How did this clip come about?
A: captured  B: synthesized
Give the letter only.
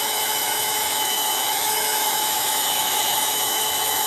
B